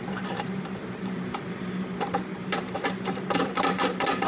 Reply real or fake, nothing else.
fake